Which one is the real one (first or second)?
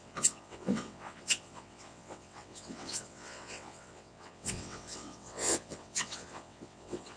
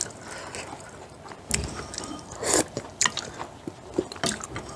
second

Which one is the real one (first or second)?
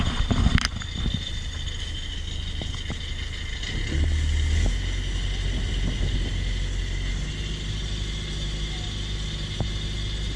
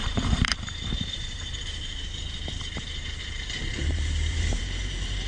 first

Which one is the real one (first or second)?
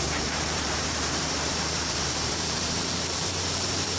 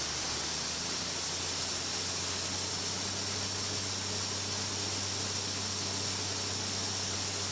second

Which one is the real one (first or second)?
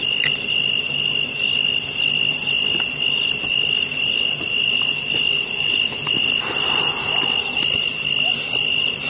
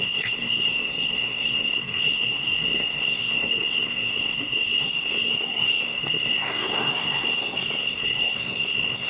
first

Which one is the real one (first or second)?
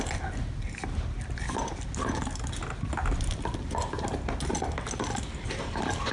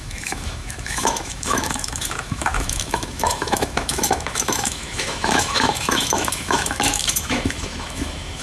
first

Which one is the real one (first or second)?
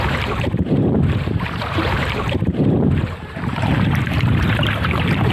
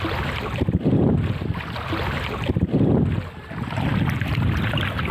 second